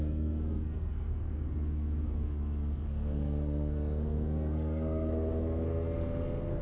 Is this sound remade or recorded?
remade